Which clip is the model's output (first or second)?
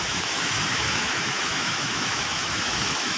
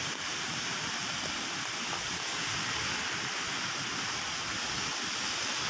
first